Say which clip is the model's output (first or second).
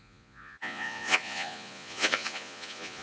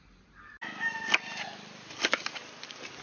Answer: first